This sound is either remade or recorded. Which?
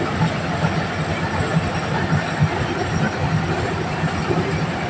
recorded